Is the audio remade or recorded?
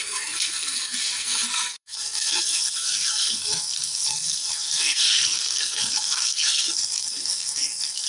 remade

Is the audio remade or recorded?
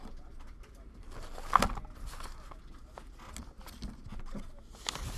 recorded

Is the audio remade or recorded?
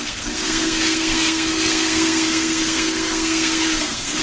remade